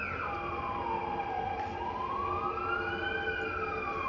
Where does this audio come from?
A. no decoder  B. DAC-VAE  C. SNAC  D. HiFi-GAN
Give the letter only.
A